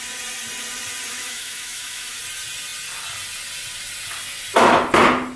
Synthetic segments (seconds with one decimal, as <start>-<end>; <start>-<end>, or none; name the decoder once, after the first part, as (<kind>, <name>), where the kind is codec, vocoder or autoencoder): 1.1-2.2 (autoencoder, DAC-VAE)